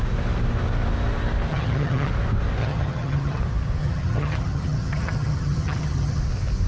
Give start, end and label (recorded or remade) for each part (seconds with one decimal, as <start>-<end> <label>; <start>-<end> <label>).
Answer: 0.0-1.5 recorded; 1.5-2.1 remade; 2.1-2.6 recorded; 2.6-3.4 remade; 3.4-3.8 recorded; 3.8-6.2 remade; 6.2-6.7 recorded